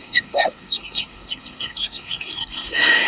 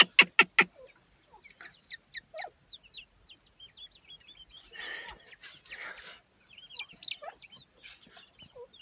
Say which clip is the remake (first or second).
first